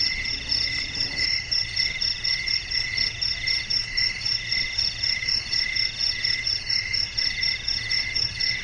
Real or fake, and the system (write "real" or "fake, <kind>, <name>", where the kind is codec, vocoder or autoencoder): real